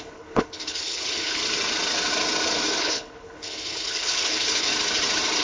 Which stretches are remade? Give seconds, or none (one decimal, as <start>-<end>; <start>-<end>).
0.0-1.4; 2.8-4.7